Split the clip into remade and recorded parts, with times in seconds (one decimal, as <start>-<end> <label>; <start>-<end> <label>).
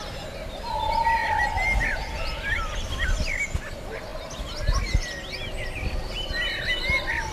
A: 0.0-7.3 recorded